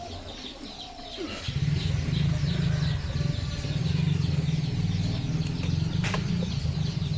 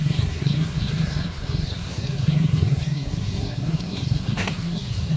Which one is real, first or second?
first